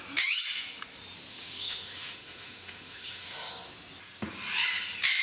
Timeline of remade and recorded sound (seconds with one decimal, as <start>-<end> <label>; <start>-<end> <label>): 0.0-1.3 recorded; 1.3-3.5 remade; 3.5-5.2 recorded